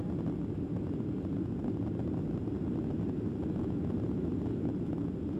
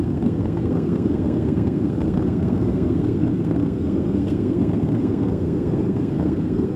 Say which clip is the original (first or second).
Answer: first